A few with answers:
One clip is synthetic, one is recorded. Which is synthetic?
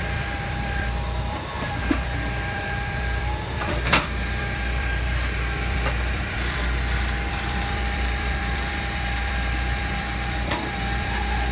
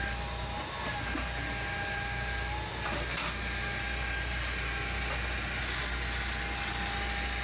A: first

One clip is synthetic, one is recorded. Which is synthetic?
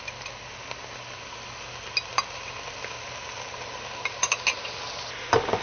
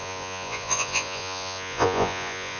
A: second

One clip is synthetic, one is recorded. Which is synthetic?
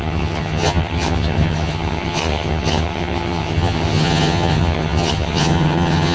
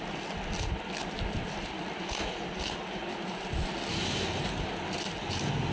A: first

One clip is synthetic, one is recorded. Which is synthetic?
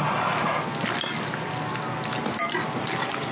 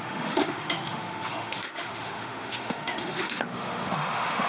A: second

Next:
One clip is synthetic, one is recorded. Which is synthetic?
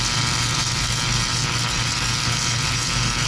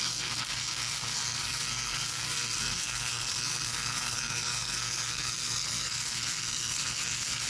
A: second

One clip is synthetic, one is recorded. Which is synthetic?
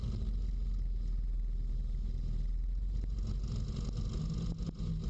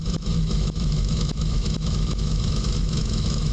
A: second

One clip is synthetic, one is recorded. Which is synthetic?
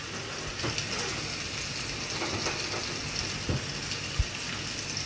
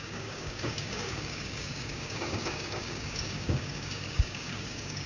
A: second